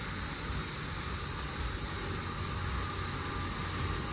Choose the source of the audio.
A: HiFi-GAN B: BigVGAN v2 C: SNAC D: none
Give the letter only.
D